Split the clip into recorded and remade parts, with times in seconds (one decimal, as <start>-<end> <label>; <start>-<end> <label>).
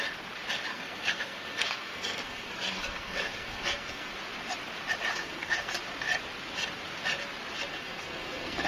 0.0-0.7 recorded; 0.7-4.1 remade; 4.1-5.1 recorded; 5.1-5.7 remade; 5.7-7.7 recorded; 7.7-8.7 remade